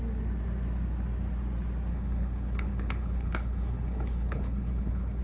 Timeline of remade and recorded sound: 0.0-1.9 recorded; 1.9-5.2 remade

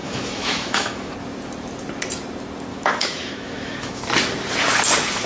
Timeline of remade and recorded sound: 0.0-1.1 remade; 1.1-2.7 recorded; 2.7-4.0 remade; 4.0-5.3 recorded

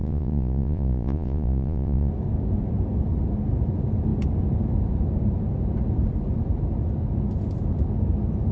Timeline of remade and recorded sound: 0.0-2.1 remade; 2.1-8.5 recorded

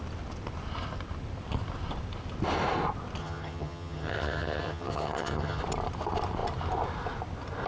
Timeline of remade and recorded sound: 0.0-3.2 recorded; 3.2-5.6 remade; 5.6-7.7 recorded

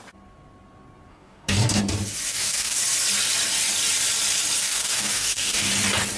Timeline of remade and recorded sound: 0.0-1.1 recorded; 1.1-1.8 remade; 1.8-2.3 recorded; 2.3-2.8 remade; 2.8-4.6 recorded; 4.6-5.7 remade; 5.7-6.2 recorded